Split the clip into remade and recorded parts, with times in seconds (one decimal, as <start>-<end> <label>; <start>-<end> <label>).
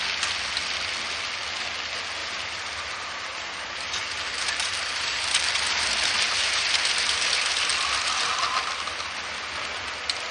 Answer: 0.0-2.2 recorded; 2.2-6.6 remade; 6.6-10.3 recorded